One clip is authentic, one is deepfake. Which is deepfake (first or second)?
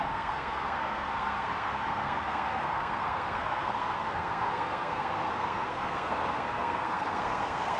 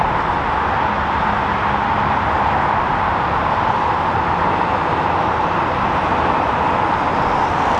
first